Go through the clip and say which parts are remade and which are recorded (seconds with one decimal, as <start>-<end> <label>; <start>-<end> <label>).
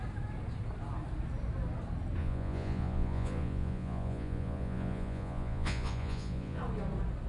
0.0-2.2 recorded; 2.2-6.6 remade; 6.6-7.3 recorded